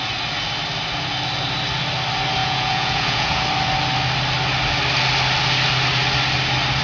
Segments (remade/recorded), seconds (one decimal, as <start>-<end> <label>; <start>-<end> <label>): 0.0-2.4 recorded; 2.4-3.4 remade; 3.4-6.8 recorded